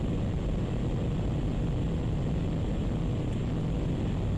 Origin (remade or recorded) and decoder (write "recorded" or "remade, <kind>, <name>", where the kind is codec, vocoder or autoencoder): recorded